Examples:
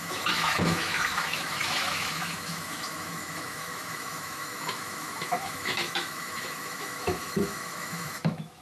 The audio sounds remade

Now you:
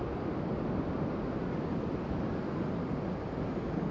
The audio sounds recorded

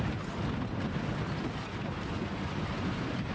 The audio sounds recorded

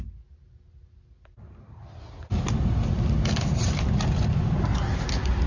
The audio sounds recorded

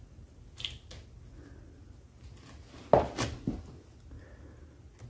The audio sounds recorded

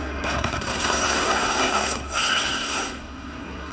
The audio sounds remade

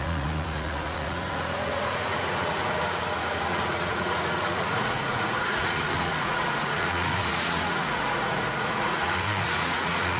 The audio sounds remade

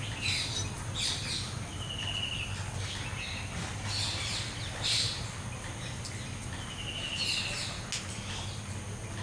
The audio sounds recorded